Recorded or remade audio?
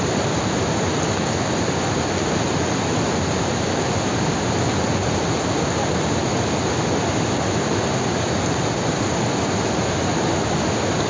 recorded